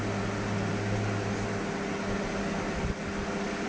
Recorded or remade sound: recorded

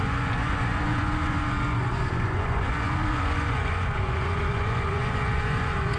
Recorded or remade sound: remade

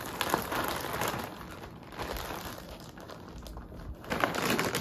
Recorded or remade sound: recorded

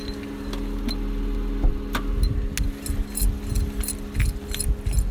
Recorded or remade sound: recorded